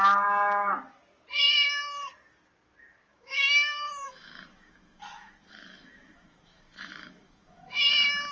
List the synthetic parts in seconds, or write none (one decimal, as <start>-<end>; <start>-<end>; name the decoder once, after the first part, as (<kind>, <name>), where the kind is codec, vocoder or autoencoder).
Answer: 3.1-7.9 (autoencoder, DAC-VAE)